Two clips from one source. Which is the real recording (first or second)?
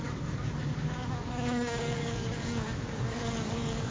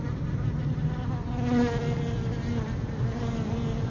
second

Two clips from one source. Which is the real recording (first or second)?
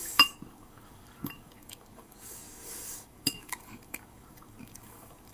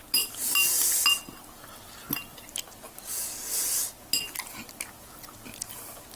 second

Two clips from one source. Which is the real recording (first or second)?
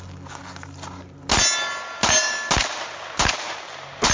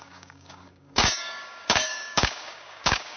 first